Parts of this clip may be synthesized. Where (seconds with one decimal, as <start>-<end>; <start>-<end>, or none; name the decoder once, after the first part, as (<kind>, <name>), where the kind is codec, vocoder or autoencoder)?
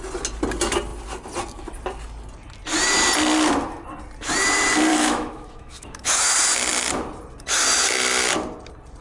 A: 4.9-6.3 (autoencoder, DAC-VAE)